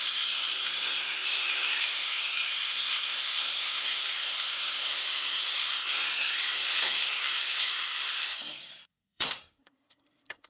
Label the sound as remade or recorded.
remade